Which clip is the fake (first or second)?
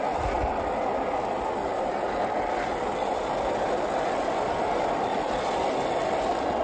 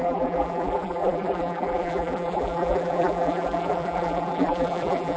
second